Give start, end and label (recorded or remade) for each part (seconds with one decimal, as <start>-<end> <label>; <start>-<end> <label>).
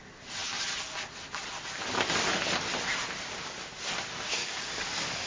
0.0-4.4 recorded; 4.4-5.3 remade